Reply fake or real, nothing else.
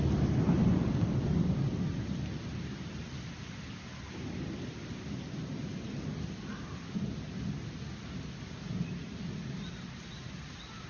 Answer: real